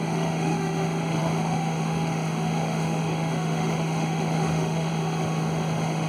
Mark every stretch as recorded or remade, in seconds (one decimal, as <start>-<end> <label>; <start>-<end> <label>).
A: 0.0-6.1 remade